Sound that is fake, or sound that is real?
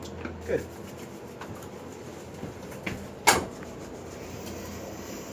real